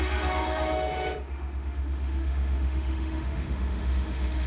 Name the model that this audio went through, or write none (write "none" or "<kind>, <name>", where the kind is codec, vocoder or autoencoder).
autoencoder, DAC-VAE